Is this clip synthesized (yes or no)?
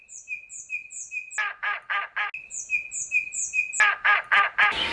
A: no